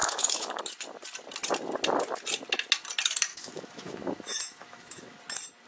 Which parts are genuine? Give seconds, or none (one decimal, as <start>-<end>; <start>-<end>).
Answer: 0.6-3.3; 5.2-5.7